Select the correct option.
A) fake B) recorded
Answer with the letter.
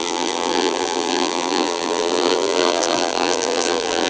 A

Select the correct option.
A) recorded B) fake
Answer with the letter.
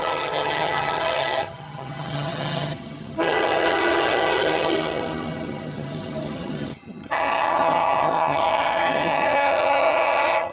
B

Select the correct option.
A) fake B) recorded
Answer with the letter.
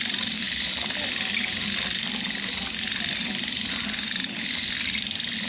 B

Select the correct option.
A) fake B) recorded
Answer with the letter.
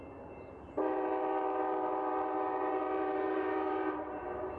A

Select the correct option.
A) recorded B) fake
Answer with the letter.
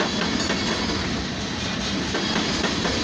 A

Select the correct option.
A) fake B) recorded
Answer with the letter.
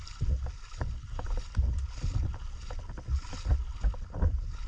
B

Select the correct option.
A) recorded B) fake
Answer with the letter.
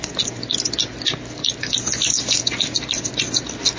A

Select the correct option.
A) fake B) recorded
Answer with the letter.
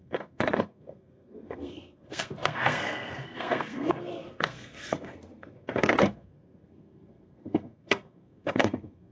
A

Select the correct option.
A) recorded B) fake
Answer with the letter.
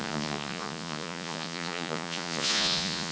B